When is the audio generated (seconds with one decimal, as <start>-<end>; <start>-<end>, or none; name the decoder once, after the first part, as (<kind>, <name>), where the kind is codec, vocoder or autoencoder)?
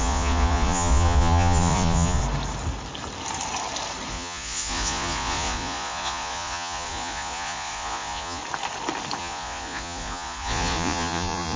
0.0-2.2 (vocoder, Vocos); 4.1-8.4; 9.2-11.6